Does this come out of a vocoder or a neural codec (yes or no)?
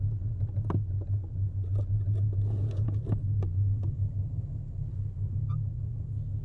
no